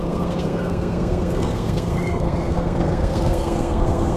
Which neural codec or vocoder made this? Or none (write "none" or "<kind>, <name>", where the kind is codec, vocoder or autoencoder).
codec, SNAC